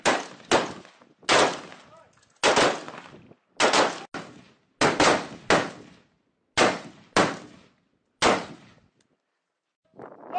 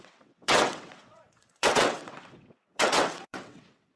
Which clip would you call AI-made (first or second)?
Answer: second